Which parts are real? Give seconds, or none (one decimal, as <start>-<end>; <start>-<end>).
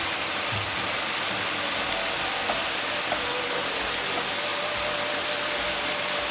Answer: 0.0-6.3